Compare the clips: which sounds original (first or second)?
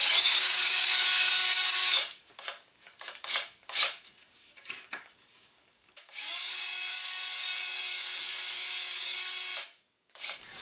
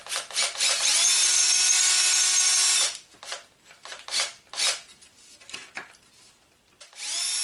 second